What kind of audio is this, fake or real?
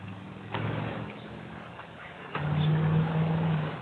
fake